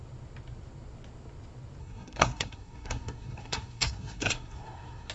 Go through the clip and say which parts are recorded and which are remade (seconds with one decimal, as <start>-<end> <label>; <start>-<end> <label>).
0.0-1.8 recorded; 1.8-5.1 remade